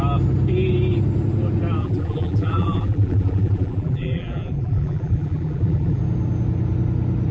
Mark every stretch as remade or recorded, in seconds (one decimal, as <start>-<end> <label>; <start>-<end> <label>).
0.0-1.8 recorded; 1.8-6.0 remade; 6.0-7.3 recorded